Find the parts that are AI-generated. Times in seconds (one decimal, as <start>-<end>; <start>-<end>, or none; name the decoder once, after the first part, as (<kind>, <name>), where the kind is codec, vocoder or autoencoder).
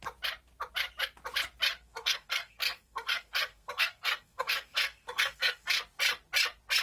1.7-5.8 (codec, SNAC)